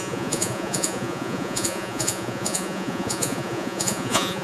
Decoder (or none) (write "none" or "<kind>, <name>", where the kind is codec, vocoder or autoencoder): vocoder, Vocos